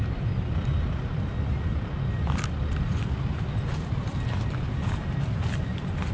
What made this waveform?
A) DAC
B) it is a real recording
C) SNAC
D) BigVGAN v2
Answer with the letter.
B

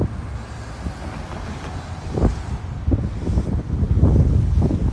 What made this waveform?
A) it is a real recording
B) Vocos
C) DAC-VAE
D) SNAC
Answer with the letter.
A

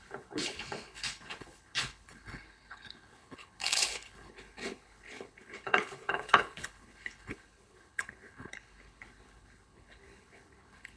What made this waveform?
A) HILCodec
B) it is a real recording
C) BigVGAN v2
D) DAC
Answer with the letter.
A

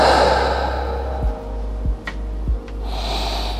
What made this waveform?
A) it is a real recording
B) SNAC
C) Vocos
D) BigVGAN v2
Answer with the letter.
A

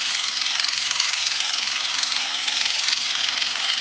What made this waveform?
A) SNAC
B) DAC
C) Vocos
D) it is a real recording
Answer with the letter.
A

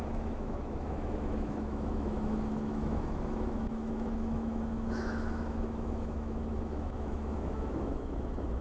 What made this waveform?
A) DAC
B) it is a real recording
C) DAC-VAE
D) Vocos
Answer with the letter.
C